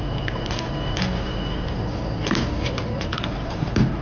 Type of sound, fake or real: fake